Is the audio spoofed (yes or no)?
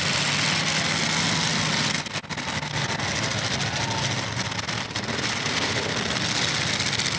no